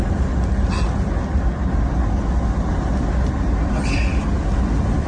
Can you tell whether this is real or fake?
real